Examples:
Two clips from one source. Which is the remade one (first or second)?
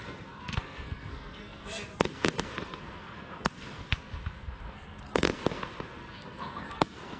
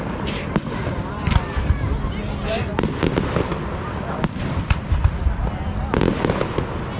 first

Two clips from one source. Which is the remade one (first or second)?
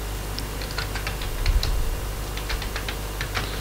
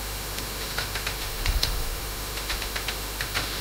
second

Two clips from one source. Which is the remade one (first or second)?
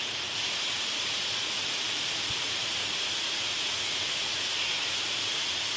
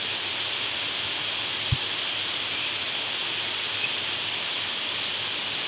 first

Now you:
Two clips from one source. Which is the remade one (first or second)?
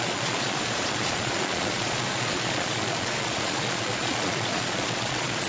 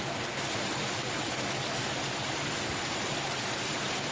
first